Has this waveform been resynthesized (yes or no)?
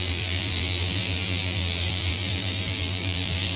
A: yes